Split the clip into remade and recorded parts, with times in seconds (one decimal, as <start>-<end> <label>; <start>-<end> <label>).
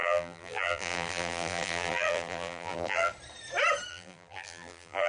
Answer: 0.0-3.1 remade; 3.1-3.9 recorded; 3.9-5.1 remade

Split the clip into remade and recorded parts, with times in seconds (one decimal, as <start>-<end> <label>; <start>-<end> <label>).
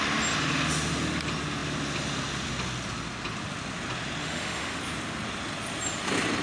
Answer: 0.0-4.2 recorded; 4.2-4.8 remade; 4.8-6.4 recorded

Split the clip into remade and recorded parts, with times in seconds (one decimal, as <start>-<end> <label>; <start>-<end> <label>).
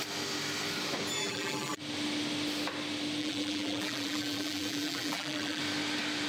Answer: 0.0-1.2 recorded; 1.2-1.8 remade; 1.8-3.2 recorded; 3.2-5.6 remade; 5.6-6.3 recorded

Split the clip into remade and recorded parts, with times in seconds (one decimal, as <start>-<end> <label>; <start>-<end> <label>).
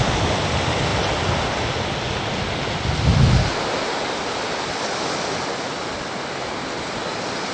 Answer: 0.0-7.5 recorded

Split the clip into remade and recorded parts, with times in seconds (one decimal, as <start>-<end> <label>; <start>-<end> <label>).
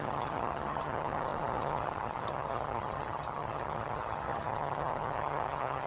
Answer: 0.0-5.9 remade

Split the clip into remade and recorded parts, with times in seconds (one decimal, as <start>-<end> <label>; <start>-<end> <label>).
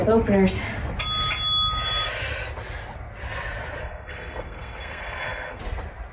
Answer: 0.0-3.8 recorded; 3.8-5.6 remade; 5.6-6.1 recorded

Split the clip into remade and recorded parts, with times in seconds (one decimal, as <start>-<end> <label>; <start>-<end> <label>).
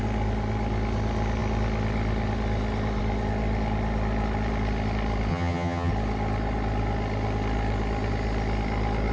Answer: 0.0-5.3 recorded; 5.3-5.9 remade; 5.9-9.1 recorded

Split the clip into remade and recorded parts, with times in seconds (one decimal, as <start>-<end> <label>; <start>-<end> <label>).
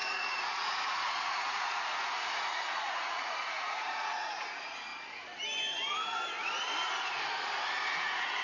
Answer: 0.0-4.9 remade; 4.9-8.0 recorded; 8.0-8.4 remade